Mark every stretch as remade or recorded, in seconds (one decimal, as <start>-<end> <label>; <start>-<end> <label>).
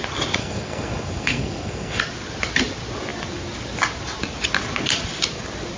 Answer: 0.0-0.4 recorded; 0.4-2.0 remade; 2.0-5.8 recorded